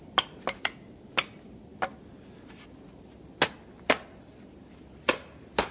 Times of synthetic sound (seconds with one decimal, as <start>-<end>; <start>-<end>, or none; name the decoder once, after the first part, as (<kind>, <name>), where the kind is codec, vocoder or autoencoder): none